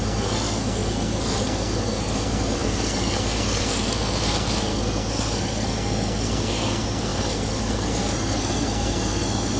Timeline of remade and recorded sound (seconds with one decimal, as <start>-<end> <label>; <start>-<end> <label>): 0.0-9.6 remade